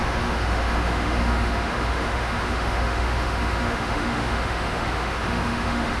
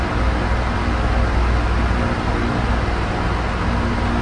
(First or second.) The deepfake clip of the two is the first